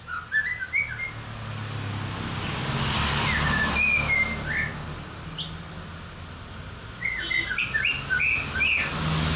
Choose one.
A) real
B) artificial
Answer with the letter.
A